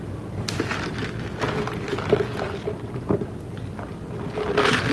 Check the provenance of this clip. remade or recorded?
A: recorded